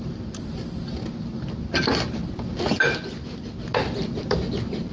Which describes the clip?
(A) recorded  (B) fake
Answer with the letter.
A